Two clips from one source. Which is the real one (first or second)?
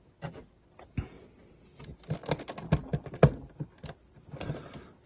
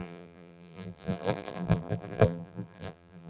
first